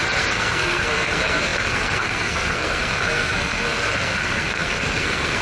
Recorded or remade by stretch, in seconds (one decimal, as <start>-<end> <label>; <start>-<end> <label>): 0.0-5.4 remade